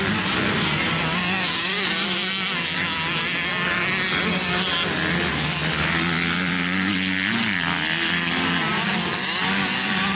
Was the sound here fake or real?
real